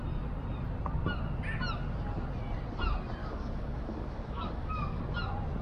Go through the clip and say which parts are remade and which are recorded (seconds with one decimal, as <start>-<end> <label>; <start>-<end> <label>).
0.0-3.2 recorded; 3.2-5.0 remade; 5.0-5.6 recorded